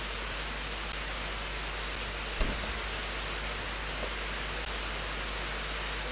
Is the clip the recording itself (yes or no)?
yes